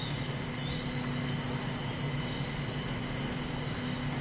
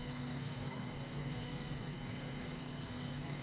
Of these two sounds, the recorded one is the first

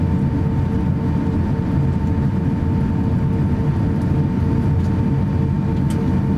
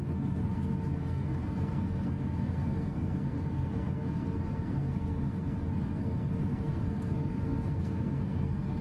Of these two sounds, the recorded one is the first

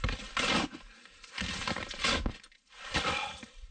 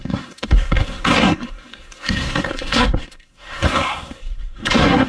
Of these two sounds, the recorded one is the first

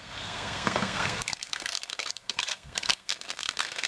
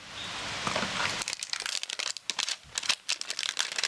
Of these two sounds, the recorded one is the second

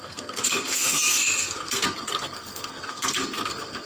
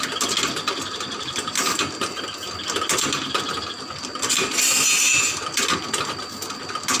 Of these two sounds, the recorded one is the second